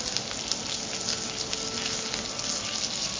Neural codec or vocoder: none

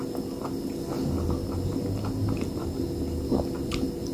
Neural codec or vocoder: none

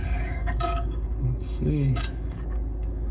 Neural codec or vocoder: codec, DAC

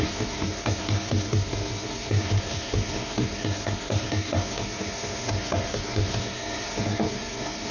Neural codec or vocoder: codec, SNAC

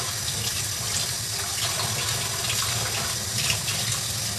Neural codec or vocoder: none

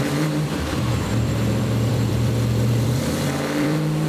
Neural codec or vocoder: vocoder, BigVGAN v2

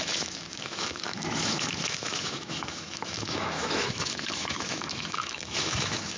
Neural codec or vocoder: autoencoder, DAC-VAE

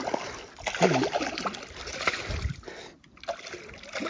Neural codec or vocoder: none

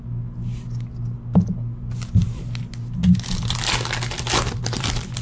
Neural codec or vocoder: none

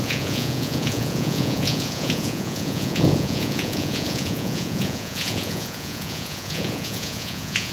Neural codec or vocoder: vocoder, Vocos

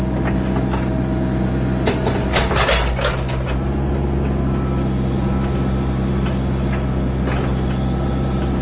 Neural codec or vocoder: none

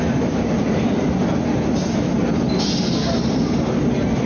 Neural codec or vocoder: none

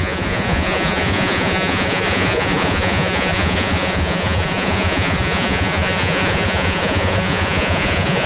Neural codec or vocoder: vocoder, Vocos